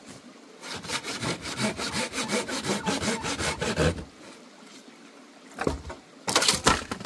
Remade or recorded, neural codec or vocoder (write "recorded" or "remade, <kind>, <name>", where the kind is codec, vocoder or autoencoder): recorded